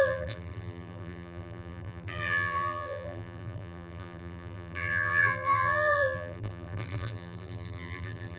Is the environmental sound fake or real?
fake